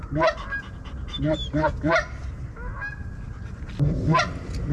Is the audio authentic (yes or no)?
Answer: yes